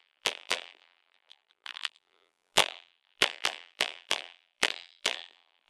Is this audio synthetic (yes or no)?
yes